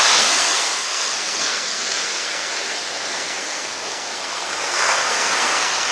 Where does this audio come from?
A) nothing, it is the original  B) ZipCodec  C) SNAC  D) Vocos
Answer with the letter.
C